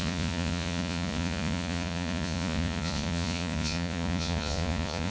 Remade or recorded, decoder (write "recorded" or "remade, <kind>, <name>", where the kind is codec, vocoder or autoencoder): remade, vocoder, Vocos